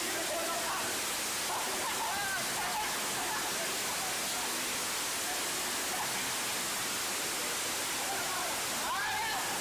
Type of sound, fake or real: real